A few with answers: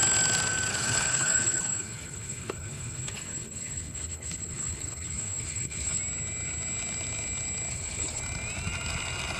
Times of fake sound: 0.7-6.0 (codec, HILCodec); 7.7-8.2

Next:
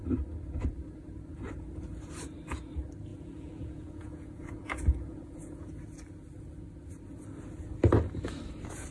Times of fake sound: 3.1-5.7 (vocoder, Vocos)

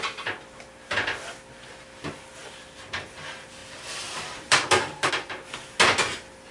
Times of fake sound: 2.4-2.9 (vocoder, BigVGAN v2); 3.6-5.1

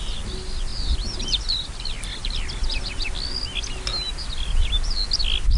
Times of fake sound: none

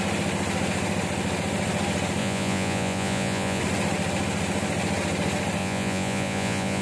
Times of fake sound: 2.2-3.6 (vocoder, Vocos); 5.6-6.8